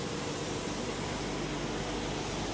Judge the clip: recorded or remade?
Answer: recorded